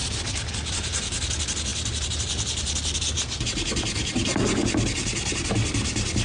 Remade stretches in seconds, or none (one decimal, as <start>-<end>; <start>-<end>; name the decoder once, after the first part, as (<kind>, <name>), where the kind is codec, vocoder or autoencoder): none

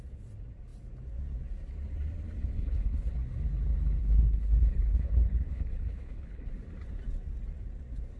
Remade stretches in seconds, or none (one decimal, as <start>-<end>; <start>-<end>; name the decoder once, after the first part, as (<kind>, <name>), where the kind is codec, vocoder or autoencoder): 2.5-3.1 (codec, HILCodec); 4.0-6.5

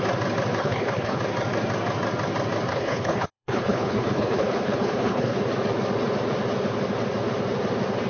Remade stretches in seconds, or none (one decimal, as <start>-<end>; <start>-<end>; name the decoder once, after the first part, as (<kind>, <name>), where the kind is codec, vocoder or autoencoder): 0.6-1.2 (codec, HILCodec); 2.7-5.4

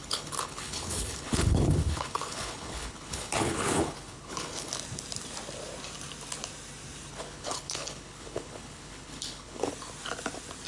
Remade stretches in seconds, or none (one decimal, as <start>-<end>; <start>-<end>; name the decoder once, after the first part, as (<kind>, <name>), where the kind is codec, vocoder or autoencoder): 0.0-4.7 (codec, HILCodec); 7.1-9.7

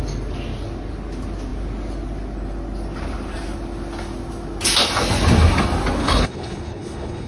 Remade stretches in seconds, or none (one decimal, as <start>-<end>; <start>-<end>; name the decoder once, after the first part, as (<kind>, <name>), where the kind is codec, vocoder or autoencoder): 6.0-7.3 (codec, HILCodec)